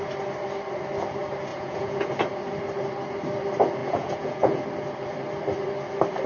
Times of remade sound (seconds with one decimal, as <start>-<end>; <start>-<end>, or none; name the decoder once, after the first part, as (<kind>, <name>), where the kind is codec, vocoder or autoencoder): 1.5-2.1 (vocoder, Vocos); 3.8-4.6